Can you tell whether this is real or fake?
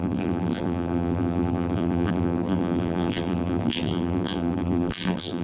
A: fake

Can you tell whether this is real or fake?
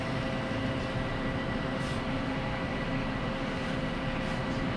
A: real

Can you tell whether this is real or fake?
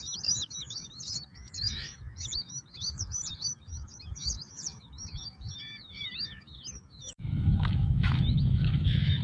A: fake